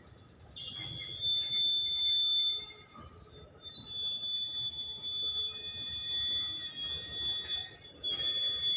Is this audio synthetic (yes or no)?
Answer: no